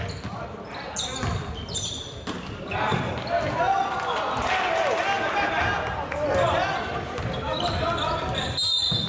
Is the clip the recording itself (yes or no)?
yes